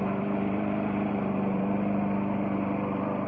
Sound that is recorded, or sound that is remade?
remade